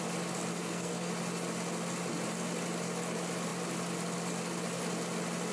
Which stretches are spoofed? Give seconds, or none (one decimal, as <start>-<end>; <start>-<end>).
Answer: 0.5-1.1